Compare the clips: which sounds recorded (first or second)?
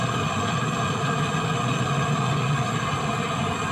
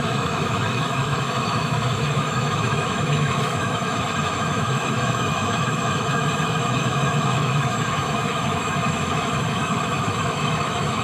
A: first